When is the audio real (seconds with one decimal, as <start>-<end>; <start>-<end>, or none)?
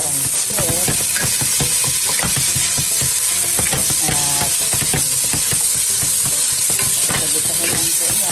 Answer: 0.0-3.2; 3.8-7.7